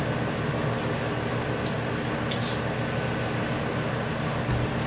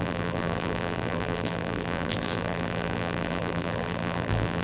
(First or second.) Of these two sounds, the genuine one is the first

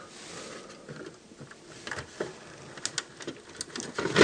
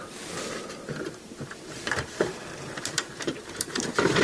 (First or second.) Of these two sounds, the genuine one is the first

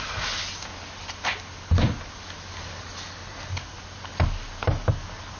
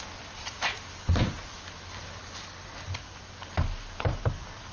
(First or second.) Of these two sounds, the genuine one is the first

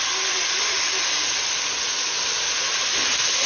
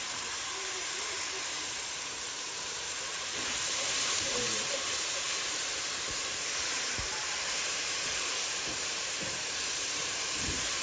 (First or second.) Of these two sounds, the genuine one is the first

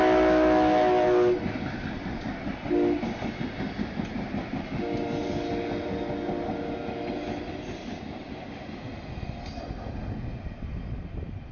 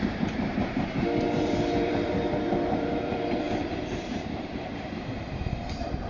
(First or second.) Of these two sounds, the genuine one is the first